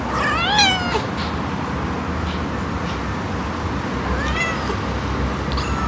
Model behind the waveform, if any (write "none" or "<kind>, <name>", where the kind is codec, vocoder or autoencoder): none